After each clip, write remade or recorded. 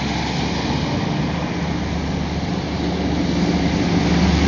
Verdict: recorded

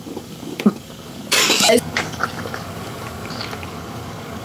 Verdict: remade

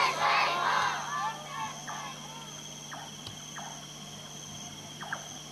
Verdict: recorded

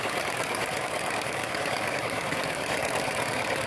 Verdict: remade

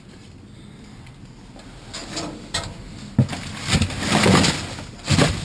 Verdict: recorded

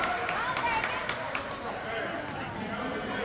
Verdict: recorded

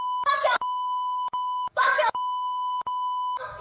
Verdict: remade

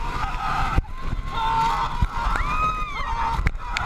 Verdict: recorded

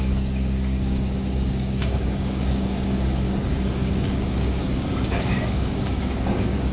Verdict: remade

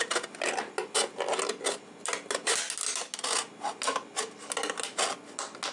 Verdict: recorded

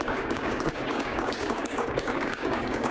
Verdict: remade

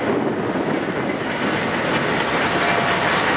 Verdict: recorded